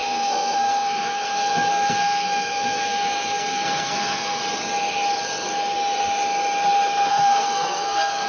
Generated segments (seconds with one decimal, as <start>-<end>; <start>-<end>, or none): 0.0-4.4; 7.1-8.3